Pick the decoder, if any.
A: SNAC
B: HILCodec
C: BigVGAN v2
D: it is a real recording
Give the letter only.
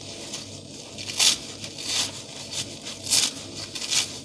D